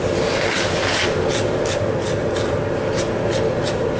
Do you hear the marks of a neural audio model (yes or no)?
no